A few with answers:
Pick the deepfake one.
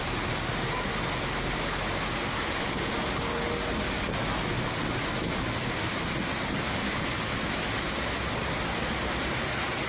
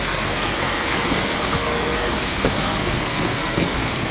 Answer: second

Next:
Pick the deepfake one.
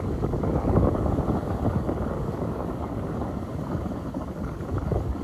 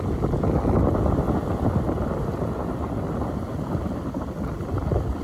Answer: first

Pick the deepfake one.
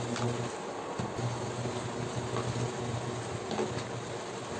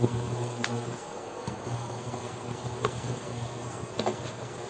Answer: second